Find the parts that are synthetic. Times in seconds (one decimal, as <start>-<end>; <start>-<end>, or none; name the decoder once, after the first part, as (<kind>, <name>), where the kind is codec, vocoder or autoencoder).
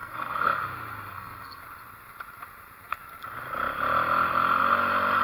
0.0-0.6 (codec, SNAC); 1.1-1.6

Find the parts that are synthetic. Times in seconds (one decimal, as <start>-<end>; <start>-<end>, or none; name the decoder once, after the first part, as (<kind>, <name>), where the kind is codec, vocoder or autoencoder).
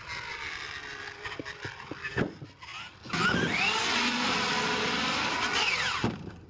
none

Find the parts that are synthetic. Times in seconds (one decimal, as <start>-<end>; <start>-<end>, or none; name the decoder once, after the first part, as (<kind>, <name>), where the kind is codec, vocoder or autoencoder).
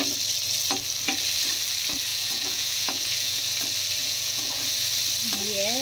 2.1-3.4 (vocoder, Vocos); 4.0-4.6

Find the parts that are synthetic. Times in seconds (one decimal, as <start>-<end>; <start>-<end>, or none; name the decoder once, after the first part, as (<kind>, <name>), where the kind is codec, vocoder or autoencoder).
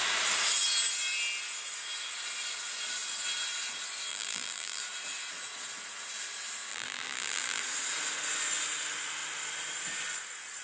4.1-4.8 (vocoder, BigVGAN v2); 6.7-7.6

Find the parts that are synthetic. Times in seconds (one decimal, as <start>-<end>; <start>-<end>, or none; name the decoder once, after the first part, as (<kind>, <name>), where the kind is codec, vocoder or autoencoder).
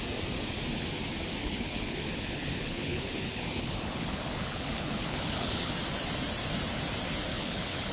1.4-5.7 (codec, HILCodec); 7.3-7.9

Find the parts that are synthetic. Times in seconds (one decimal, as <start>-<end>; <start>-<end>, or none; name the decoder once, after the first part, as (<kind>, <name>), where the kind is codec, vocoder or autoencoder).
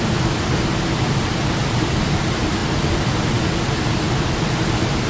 none